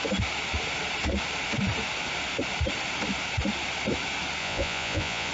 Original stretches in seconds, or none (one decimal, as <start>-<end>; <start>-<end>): 0.0-4.4